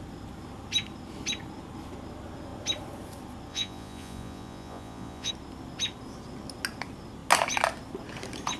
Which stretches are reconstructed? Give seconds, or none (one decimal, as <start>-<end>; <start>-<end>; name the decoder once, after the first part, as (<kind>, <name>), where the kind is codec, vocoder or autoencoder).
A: 3.5-5.3 (vocoder, Vocos)